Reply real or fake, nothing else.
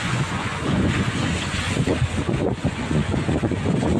fake